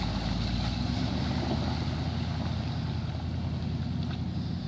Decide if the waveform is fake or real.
real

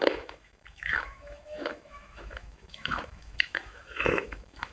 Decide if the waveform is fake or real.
fake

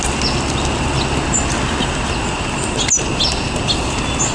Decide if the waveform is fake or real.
real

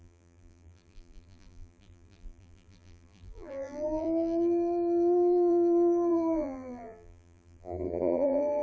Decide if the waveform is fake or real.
fake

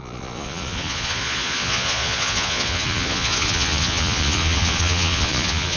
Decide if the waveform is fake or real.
fake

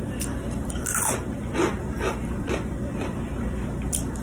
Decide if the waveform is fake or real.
fake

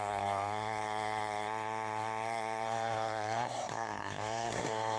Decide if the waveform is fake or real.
fake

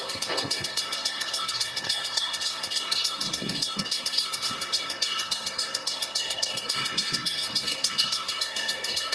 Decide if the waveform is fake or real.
fake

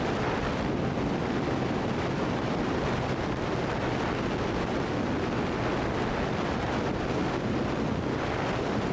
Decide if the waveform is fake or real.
real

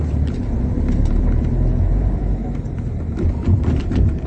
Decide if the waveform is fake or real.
fake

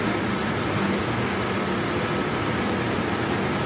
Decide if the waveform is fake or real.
real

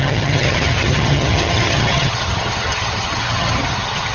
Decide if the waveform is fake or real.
fake